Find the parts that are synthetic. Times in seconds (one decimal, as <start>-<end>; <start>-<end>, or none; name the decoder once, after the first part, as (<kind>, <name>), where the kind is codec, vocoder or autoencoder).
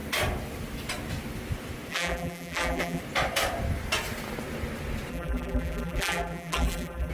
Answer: 1.9-3.0 (vocoder, BigVGAN v2); 5.1-7.1